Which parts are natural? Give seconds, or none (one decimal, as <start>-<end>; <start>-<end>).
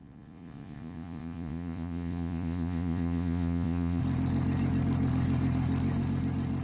4.0-6.6